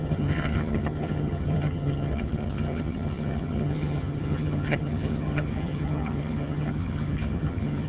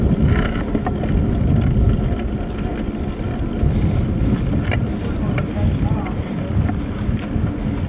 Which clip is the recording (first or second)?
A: second